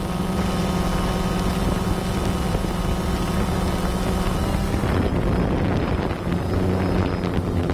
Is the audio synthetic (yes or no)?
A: no